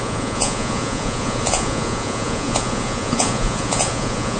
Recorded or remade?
remade